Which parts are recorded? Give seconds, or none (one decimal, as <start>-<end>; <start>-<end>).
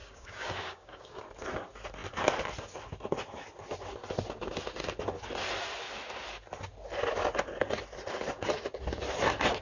1.2-9.6